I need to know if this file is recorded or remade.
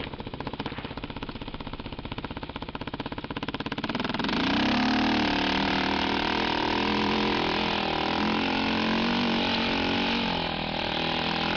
recorded